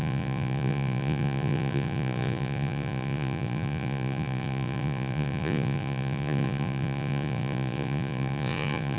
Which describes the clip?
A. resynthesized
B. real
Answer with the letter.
A